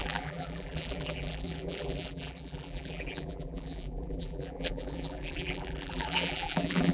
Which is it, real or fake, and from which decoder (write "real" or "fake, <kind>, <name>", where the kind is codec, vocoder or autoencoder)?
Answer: fake, vocoder, BigVGAN v2